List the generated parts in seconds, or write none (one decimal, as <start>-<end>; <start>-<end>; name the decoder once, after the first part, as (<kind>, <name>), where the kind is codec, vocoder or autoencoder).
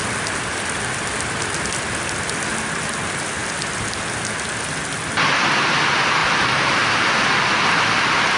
6.2-7.1 (vocoder, BigVGAN v2)